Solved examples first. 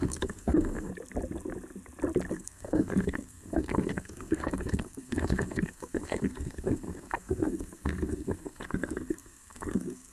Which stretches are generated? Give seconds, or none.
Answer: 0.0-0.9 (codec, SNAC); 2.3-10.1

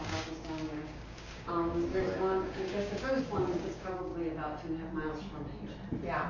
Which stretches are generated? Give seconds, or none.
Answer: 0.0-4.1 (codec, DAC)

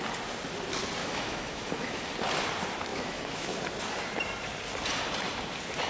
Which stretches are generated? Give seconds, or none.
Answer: 1.0-2.0 (autoencoder, DAC-VAE); 2.9-3.6

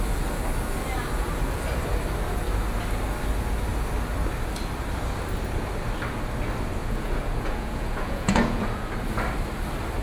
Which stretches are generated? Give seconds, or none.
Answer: 6.8-8.9 (vocoder, Vocos)